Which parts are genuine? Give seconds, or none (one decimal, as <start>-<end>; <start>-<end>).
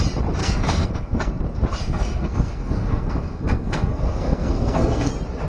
0.0-0.4; 1.4-1.8; 5.1-5.5